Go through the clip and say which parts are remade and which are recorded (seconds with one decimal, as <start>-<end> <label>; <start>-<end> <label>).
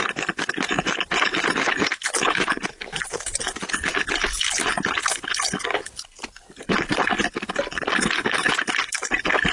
0.0-9.5 recorded